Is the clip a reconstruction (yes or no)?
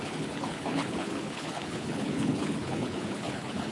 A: yes